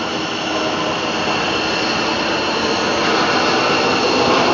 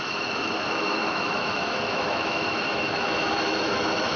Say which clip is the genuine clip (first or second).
first